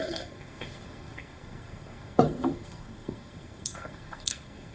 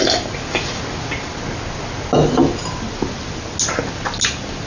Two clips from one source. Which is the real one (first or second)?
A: second